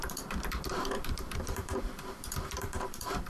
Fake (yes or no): yes